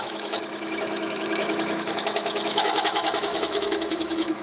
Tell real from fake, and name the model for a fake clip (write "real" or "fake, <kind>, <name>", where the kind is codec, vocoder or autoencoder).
fake, autoencoder, DAC-VAE